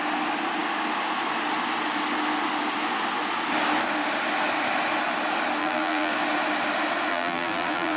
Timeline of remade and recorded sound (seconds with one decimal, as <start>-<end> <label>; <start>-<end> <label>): 0.0-5.6 recorded; 5.6-6.1 remade; 6.1-7.1 recorded; 7.1-8.0 remade